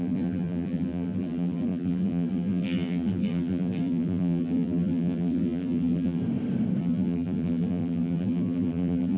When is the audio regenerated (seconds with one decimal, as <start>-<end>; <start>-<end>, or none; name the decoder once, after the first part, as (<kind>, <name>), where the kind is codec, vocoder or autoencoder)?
0.0-6.2 (vocoder, BigVGAN v2); 6.8-9.2